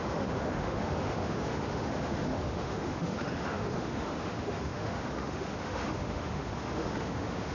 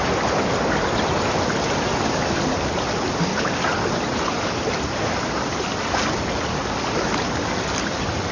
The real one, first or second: second